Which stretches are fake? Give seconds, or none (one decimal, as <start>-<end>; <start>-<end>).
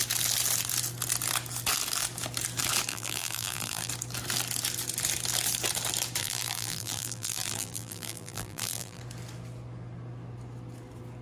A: 2.9-3.9; 6.2-9.0